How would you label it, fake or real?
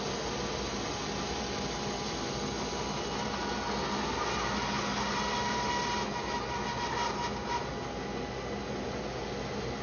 real